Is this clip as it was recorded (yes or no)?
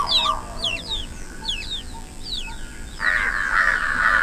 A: no